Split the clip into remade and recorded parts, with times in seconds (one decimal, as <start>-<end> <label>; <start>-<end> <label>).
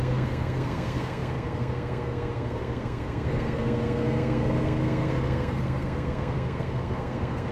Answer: 0.0-7.5 remade